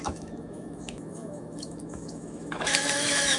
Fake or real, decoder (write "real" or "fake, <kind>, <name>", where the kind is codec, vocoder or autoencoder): fake, autoencoder, DAC-VAE